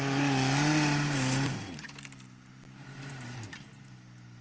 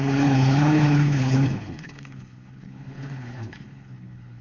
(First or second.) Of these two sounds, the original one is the first